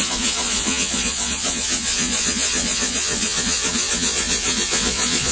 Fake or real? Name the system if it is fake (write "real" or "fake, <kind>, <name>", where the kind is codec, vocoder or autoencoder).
fake, vocoder, Vocos